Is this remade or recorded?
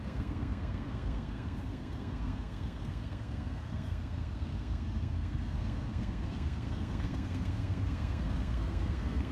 remade